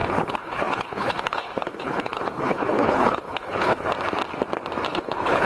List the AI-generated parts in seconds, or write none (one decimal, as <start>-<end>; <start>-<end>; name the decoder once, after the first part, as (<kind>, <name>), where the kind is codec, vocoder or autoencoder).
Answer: 0.0-3.9 (codec, HILCodec); 4.9-5.5